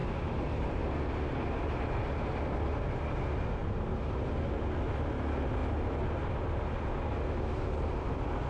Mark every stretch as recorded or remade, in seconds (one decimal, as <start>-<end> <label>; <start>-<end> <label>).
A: 0.0-0.8 remade; 0.8-3.6 recorded; 3.6-4.3 remade; 4.3-8.5 recorded